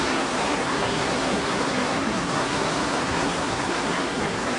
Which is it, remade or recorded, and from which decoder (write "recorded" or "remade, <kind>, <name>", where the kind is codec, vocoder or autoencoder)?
remade, codec, SNAC